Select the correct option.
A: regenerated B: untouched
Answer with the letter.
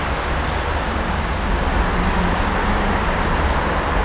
B